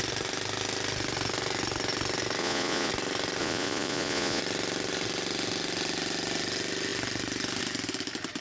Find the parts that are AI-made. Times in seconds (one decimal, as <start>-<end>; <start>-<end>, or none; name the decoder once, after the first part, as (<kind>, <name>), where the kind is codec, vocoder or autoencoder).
2.4-2.9 (vocoder, Vocos); 3.4-4.4